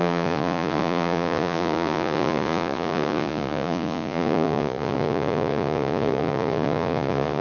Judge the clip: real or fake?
fake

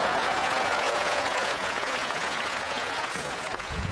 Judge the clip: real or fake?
fake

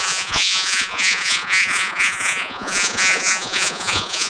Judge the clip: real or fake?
fake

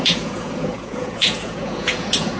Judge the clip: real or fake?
fake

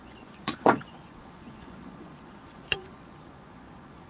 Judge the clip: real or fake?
fake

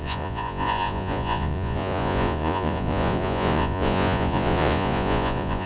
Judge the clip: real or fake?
fake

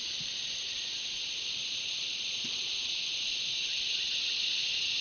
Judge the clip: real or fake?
fake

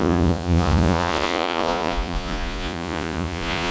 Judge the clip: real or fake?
fake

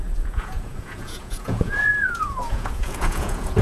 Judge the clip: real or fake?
fake